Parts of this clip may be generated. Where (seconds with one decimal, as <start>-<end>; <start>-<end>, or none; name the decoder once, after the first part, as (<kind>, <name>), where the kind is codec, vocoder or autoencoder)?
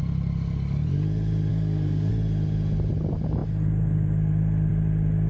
1.5-2.1 (codec, SNAC)